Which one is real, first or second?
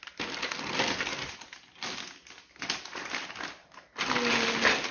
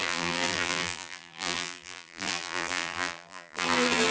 first